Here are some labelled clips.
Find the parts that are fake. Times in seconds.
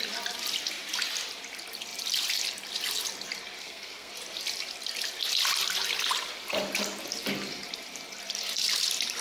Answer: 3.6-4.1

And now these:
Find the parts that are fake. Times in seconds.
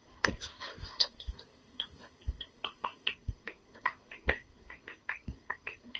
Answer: 0.0-6.0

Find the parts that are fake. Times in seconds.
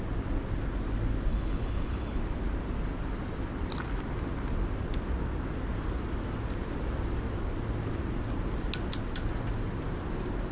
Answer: 1.3-2.2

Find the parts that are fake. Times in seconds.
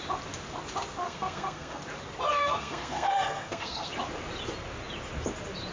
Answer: 1.0-1.8; 2.3-3.9